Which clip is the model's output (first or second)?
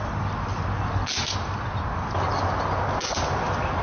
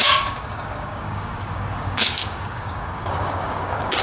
second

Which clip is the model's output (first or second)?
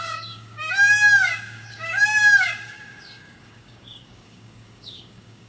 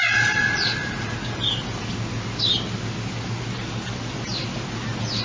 first